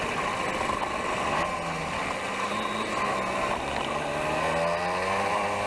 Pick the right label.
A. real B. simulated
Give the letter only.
A